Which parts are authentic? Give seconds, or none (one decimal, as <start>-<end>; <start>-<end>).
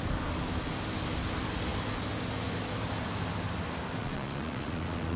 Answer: 0.0-4.0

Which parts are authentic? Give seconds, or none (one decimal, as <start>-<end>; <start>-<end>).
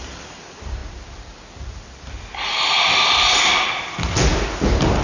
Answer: 0.0-5.0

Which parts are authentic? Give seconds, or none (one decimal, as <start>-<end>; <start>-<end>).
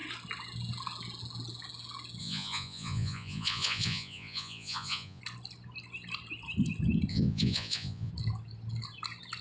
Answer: 0.0-2.2; 5.2-7.1; 8.1-9.4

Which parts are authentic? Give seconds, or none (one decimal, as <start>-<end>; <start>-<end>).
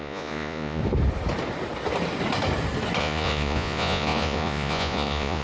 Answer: 0.8-3.0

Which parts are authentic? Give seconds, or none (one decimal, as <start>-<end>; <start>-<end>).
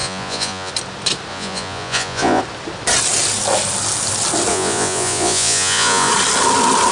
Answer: 0.7-1.3; 2.4-4.5; 6.1-6.9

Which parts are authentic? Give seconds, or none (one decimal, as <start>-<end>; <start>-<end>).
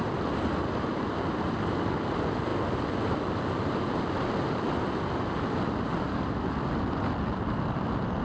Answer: 0.0-8.2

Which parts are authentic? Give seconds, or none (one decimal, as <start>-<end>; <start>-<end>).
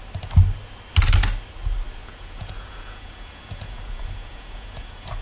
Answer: 0.0-2.0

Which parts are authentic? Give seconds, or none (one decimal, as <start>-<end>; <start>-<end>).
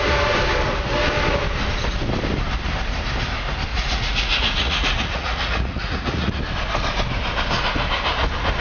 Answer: 0.0-3.7; 6.4-8.6